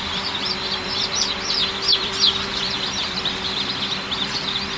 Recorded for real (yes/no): no